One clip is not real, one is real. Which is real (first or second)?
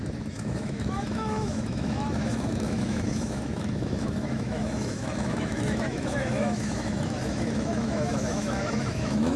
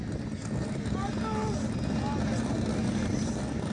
second